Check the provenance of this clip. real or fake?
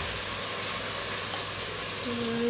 real